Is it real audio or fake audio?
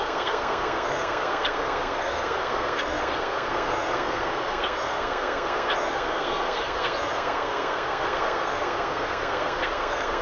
fake